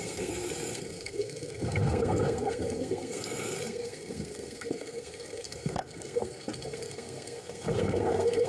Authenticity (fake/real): fake